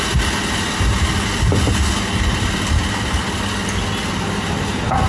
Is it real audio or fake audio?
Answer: real